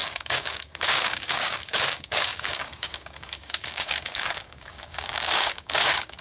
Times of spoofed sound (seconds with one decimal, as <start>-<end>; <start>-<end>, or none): 0.0-6.2